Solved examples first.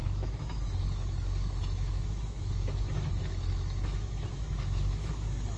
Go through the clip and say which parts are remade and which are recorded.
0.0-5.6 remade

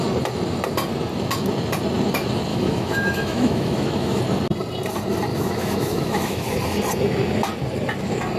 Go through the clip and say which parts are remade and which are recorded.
0.0-2.5 recorded; 2.5-4.2 remade; 4.2-5.3 recorded; 5.3-6.6 remade; 6.6-8.4 recorded